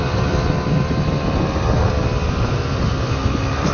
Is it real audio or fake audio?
real